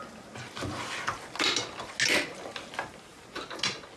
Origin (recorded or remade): recorded